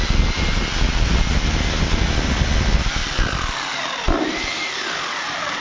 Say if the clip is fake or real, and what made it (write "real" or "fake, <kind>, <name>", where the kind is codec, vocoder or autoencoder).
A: real